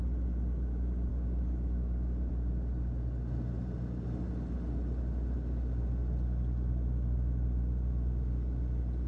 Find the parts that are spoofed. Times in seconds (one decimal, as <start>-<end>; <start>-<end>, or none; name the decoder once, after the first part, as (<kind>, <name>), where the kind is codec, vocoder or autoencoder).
1.1-2.3 (codec, DAC)